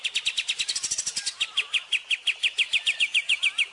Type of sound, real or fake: real